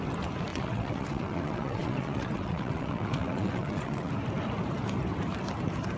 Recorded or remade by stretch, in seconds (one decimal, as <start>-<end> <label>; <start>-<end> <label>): 0.0-0.5 recorded; 0.5-4.1 remade; 4.1-6.0 recorded